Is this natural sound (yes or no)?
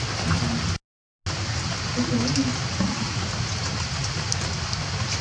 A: yes